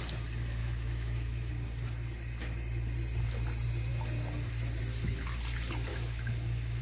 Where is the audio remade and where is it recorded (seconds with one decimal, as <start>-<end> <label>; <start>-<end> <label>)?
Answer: 0.0-0.6 recorded; 0.6-1.5 remade; 1.5-5.9 recorded; 5.9-6.8 remade

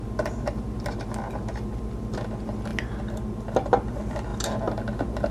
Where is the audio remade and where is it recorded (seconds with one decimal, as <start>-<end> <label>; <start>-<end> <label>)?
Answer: 0.0-5.3 recorded

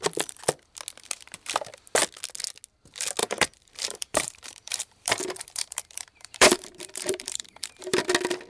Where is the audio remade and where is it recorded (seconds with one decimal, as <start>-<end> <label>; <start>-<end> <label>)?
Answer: 0.0-3.2 recorded; 3.2-8.1 remade; 8.1-8.5 recorded

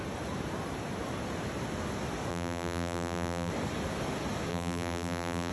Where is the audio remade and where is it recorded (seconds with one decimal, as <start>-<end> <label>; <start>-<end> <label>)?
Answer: 0.0-2.3 recorded; 2.3-3.5 remade; 3.5-4.5 recorded; 4.5-5.5 remade

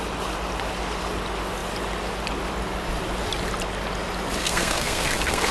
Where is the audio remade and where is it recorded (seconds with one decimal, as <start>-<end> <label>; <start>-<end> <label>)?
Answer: 0.0-4.4 recorded; 4.4-5.5 remade

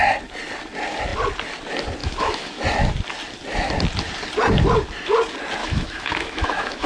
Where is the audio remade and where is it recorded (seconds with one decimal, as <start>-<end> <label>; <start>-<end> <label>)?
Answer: 0.0-2.0 recorded; 2.0-2.6 remade; 2.6-5.6 recorded; 5.6-6.9 remade

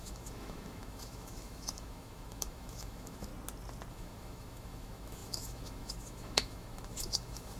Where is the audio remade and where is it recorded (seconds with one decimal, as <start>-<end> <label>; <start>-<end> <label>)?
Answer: 0.0-3.3 remade; 3.3-3.9 recorded; 3.9-7.6 remade